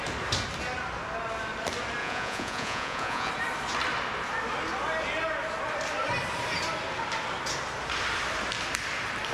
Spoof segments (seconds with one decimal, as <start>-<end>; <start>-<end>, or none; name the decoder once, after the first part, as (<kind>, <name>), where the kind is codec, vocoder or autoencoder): 2.0-3.3 (vocoder, Vocos)